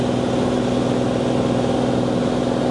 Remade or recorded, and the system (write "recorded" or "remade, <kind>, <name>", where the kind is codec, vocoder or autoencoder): recorded